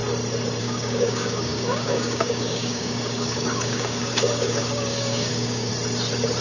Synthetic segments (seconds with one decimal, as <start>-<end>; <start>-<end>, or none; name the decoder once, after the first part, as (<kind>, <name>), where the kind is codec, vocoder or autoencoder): 0.6-5.7 (codec, DAC)